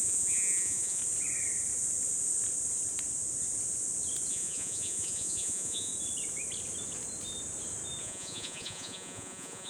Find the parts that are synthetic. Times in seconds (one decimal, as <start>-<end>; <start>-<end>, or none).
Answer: 0.0-1.0; 4.3-5.9; 8.0-9.7